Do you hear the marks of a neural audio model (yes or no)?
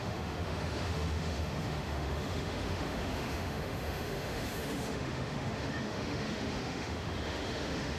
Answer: yes